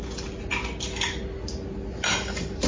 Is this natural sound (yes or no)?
yes